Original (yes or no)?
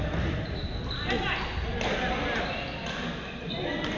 yes